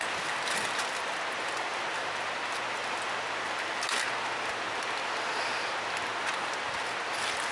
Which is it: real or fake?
real